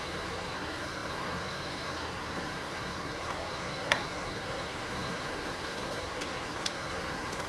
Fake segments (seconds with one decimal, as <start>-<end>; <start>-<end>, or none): 0.0-7.5